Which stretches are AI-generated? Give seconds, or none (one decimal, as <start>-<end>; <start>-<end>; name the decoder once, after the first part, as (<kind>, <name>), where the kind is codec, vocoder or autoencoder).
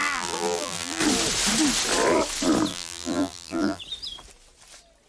0.0-1.0 (vocoder, BigVGAN v2); 2.7-3.8